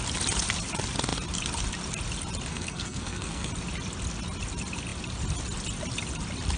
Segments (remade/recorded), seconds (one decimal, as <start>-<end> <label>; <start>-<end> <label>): 0.0-2.5 recorded; 2.5-3.5 remade; 3.5-6.6 recorded